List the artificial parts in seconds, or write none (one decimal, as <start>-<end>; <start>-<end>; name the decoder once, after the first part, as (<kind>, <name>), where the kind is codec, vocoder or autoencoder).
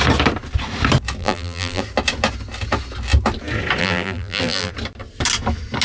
1.2-1.8 (vocoder, BigVGAN v2); 3.8-4.7